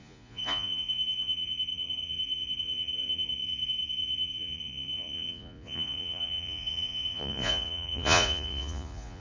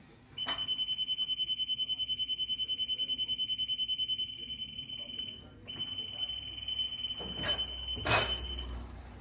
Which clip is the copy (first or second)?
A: first